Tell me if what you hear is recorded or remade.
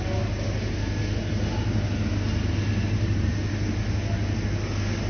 recorded